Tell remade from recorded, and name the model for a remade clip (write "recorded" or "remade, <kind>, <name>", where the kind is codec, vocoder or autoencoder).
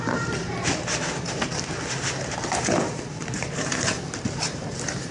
remade, vocoder, BigVGAN v2